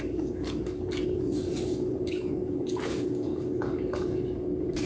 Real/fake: fake